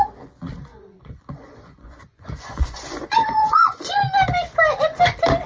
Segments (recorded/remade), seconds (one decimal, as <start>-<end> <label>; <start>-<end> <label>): 0.0-0.7 recorded; 0.7-4.0 remade; 4.0-5.5 recorded